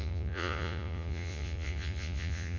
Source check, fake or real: fake